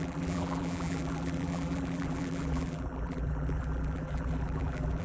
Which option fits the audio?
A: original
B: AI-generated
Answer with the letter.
B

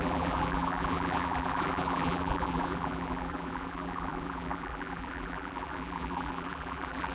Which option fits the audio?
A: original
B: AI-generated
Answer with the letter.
B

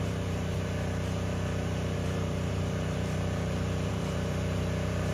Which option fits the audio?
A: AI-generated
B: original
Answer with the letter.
A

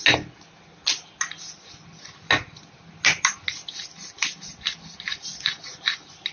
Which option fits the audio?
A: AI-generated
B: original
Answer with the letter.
B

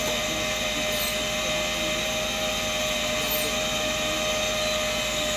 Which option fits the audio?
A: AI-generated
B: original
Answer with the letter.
B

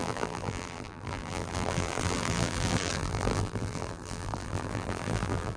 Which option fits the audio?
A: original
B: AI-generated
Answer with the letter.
B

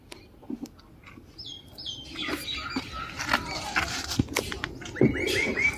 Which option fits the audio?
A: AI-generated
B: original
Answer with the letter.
B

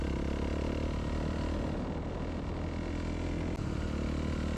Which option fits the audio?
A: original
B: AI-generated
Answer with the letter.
A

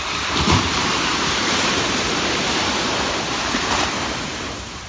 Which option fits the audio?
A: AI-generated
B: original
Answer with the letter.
A